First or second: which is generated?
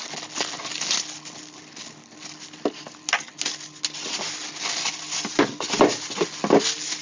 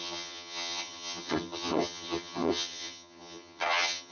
second